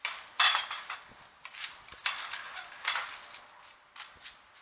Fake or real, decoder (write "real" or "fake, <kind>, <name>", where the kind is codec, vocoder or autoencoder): real